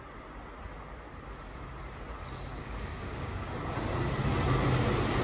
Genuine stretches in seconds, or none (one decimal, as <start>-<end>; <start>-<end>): 0.0-2.6; 3.5-5.2